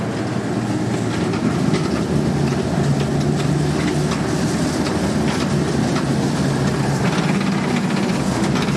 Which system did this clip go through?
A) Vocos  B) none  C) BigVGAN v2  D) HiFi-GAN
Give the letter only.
B